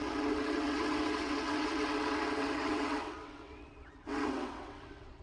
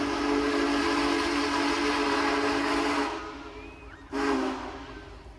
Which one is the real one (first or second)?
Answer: second